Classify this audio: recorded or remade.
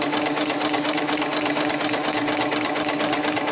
recorded